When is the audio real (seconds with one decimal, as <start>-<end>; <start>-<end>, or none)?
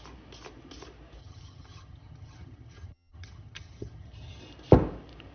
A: 0.0-1.2; 4.4-5.3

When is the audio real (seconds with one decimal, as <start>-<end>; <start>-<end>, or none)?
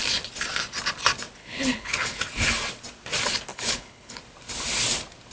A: 0.0-1.4; 2.2-3.5; 4.2-5.3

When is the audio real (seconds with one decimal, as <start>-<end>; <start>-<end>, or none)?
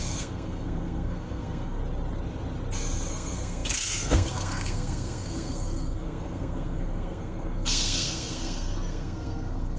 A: 1.8-3.1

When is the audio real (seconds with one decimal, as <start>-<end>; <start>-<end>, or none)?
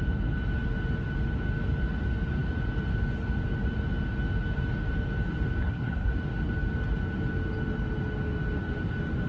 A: 0.0-5.6; 6.1-9.3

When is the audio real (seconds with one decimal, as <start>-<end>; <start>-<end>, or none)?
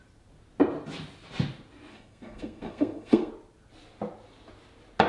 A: 0.0-1.9; 3.3-5.1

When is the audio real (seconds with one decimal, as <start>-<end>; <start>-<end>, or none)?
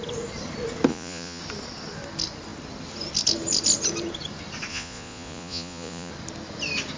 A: 0.0-0.9; 1.4-4.7; 6.1-7.0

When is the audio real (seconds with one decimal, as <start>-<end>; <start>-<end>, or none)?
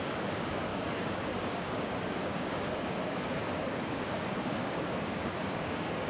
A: none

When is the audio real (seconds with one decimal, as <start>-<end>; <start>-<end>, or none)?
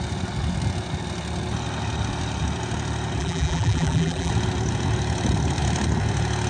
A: 0.0-3.2; 4.3-6.5